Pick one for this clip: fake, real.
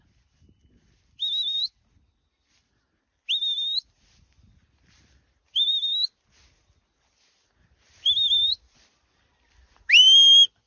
real